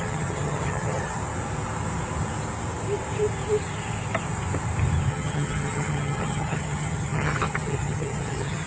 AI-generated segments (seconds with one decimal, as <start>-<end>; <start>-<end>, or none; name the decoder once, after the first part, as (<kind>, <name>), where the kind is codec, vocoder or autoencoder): 0.0-1.2 (vocoder, HiFi-GAN); 5.1-8.7